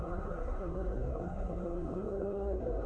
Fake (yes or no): yes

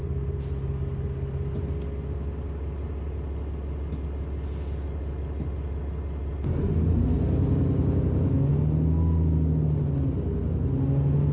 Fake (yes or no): no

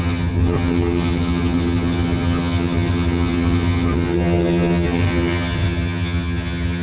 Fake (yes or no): yes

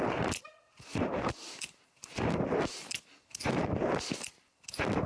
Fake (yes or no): yes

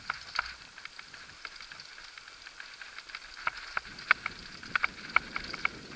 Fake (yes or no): no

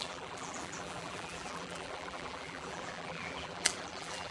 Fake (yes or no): yes